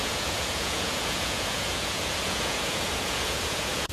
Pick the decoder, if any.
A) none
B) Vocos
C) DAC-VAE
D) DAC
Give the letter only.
B